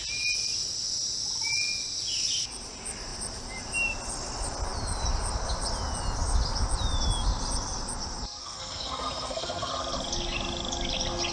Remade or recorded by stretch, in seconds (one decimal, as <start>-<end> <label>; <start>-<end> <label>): 0.0-8.4 recorded; 8.4-9.7 remade; 9.7-11.3 recorded